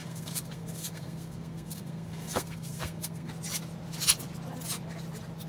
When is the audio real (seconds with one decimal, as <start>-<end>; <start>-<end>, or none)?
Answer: 3.3-5.5